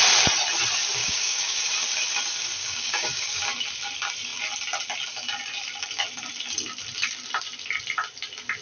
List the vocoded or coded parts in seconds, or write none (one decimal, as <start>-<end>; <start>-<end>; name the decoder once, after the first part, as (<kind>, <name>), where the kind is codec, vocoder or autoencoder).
1.0-1.6 (codec, DAC); 2.6-3.4